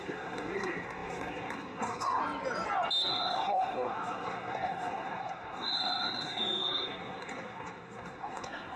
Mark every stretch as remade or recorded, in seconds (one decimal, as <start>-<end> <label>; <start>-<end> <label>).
0.0-2.2 remade; 2.2-3.1 recorded; 3.1-8.8 remade